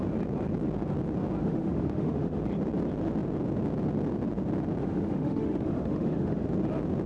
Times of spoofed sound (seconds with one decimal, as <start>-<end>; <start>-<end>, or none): 1.4-2.4; 4.8-6.5